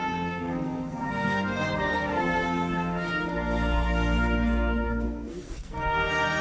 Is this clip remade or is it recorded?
remade